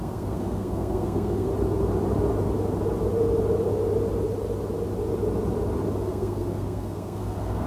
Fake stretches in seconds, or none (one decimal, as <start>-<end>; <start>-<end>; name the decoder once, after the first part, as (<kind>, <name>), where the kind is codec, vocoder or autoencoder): 0.0-1.5 (codec, SNAC); 6.1-7.7